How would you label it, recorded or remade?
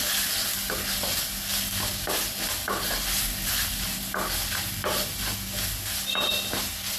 recorded